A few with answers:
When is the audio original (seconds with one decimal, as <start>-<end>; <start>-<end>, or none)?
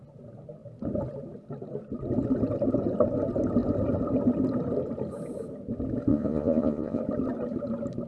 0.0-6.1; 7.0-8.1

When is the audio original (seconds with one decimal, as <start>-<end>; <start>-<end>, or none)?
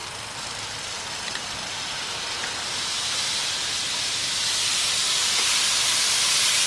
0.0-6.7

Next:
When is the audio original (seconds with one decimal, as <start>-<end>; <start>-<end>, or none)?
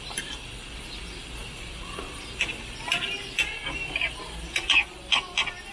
0.0-5.7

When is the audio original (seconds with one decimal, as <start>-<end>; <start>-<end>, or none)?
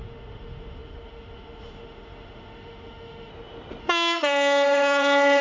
3.3-3.8